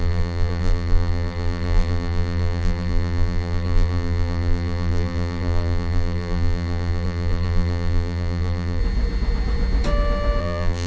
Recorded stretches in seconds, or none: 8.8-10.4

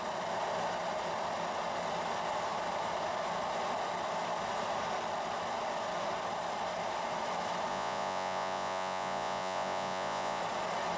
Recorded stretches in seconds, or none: 0.0-7.7; 10.4-11.0